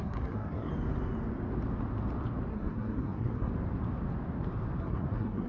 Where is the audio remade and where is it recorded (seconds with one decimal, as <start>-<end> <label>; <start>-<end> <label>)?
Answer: 0.0-0.7 remade; 0.7-2.5 recorded; 2.5-3.5 remade; 3.5-4.8 recorded; 4.8-5.5 remade